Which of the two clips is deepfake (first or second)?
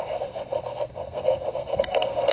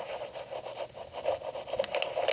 first